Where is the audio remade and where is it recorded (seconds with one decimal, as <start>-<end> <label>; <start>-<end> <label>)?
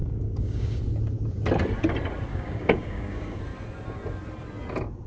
0.0-0.8 remade; 0.8-2.3 recorded; 2.3-3.4 remade; 3.4-5.1 recorded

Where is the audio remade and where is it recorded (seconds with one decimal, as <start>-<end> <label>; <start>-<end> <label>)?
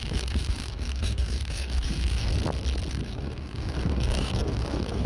0.0-2.3 remade; 2.3-2.9 recorded; 2.9-5.1 remade